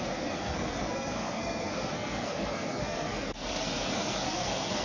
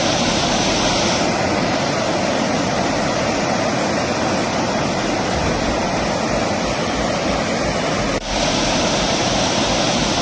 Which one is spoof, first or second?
first